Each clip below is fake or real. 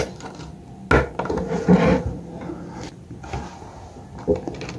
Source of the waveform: real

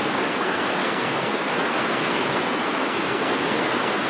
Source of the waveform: fake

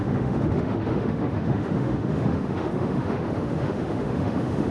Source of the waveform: fake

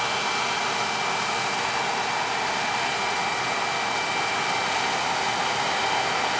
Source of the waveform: real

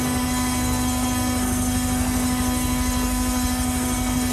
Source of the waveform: fake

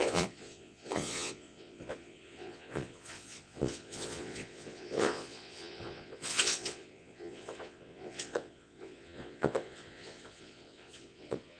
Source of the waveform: fake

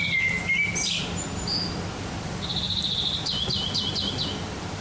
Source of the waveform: real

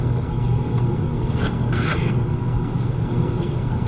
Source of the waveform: fake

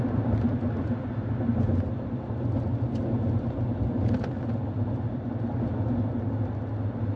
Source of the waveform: real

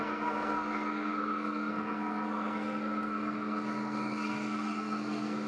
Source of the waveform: fake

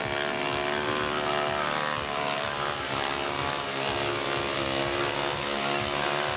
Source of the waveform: real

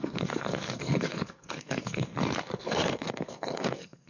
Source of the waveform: fake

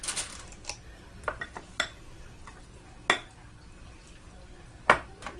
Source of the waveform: real